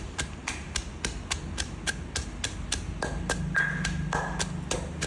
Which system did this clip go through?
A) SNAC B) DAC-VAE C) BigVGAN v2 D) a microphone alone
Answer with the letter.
D